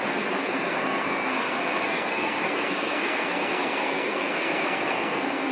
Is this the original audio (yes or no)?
no